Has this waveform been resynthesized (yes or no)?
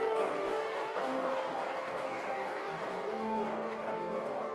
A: yes